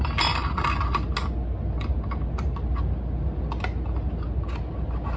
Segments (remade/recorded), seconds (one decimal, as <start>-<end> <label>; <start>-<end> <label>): 0.0-5.2 recorded